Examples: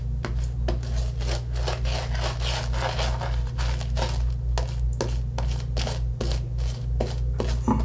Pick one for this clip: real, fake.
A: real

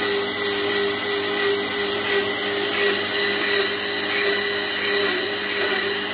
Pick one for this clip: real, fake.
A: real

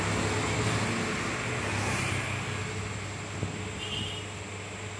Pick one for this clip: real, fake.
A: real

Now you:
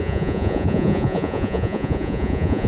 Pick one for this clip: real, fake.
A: fake